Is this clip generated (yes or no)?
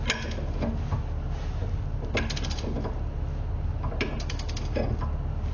no